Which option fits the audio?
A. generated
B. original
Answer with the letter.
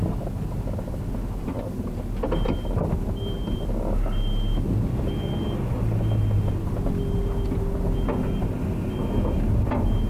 B